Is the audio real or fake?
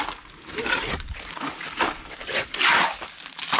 real